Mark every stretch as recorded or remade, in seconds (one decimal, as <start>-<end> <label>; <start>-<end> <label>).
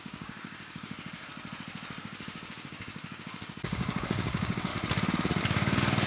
0.0-1.3 remade; 1.3-2.0 recorded; 2.0-4.7 remade; 4.7-5.4 recorded; 5.4-6.1 remade